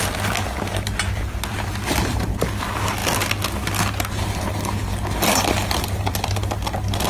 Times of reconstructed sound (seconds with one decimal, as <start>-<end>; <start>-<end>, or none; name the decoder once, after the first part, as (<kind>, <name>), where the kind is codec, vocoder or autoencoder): 1.5-2.3 (vocoder, BigVGAN v2)